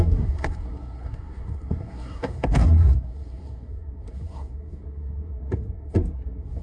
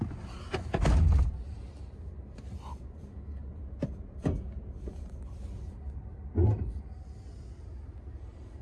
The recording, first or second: second